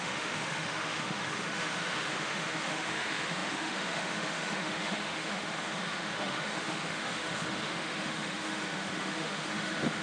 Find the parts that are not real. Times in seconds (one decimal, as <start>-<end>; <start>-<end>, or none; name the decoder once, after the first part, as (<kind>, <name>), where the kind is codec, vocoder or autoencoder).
0.0-10.0 (autoencoder, DAC-VAE)